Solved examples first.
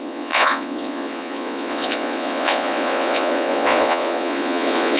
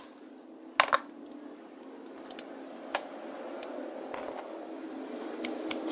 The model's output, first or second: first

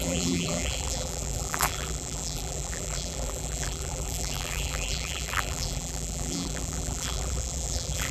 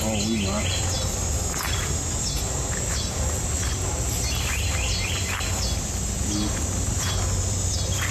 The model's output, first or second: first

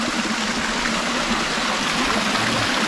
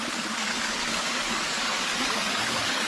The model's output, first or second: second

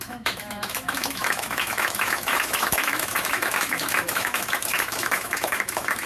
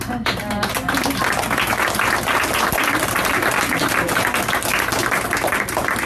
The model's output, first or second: first